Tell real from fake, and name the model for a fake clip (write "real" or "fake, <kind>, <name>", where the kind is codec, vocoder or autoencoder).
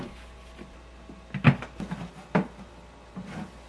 real